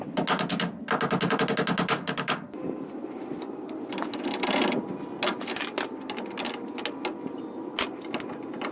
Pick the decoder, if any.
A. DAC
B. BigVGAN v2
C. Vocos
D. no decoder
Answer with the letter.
D